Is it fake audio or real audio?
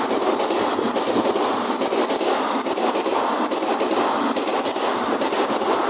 real